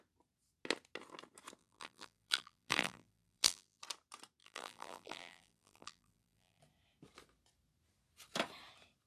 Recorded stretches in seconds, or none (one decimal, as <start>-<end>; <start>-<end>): 0.0-1.6; 3.8-4.4; 6.6-9.1